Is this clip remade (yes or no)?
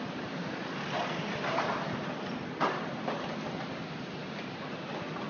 no